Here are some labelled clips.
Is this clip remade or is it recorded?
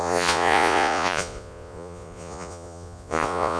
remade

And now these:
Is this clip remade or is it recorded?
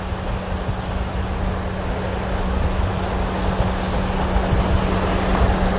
recorded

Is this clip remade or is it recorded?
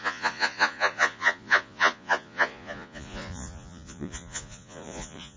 remade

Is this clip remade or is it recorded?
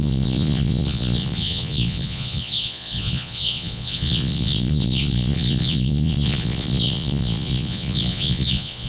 remade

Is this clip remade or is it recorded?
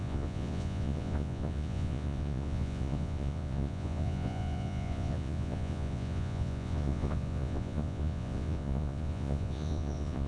remade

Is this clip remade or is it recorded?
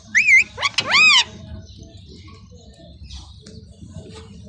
recorded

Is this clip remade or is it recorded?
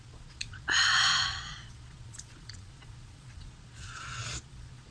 remade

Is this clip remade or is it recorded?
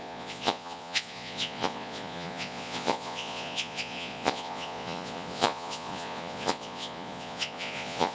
remade